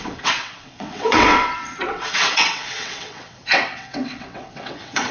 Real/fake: fake